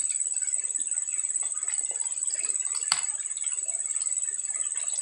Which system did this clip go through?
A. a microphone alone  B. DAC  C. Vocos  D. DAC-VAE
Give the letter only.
A